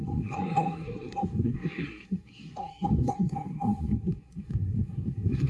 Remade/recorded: remade